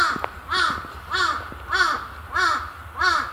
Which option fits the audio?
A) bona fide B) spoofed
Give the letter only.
A